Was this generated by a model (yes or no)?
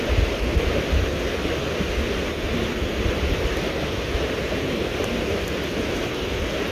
no